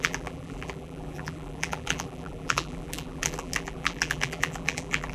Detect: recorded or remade remade